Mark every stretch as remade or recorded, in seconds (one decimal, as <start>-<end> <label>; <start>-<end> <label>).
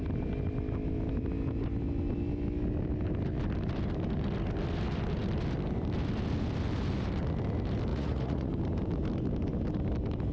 0.0-7.9 recorded; 7.9-8.5 remade; 8.5-10.3 recorded